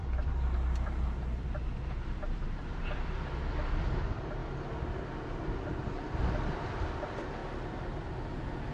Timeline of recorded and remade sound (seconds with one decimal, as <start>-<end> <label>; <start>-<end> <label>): 0.0-4.4 remade; 4.4-5.0 recorded; 5.0-8.7 remade